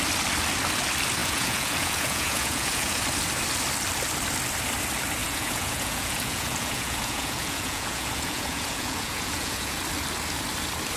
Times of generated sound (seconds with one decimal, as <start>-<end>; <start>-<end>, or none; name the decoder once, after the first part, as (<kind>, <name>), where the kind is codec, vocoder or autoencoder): 1.2-3.0 (vocoder, Vocos); 5.2-9.8